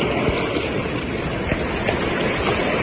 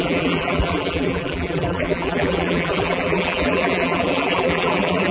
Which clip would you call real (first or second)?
first